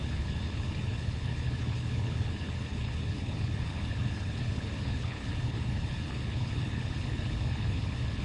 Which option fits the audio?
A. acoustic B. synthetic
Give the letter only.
B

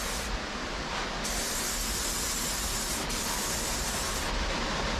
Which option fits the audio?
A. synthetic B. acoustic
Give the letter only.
B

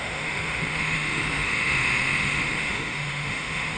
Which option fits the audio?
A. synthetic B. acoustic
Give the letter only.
A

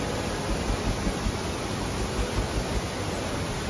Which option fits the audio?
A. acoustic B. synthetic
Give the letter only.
A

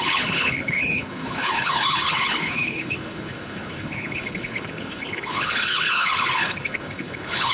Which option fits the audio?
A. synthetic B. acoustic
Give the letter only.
A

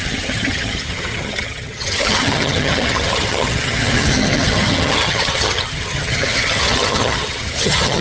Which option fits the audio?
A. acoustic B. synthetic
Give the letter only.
B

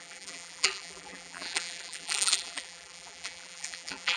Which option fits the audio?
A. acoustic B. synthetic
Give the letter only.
B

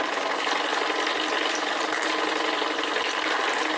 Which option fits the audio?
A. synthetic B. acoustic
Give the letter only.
B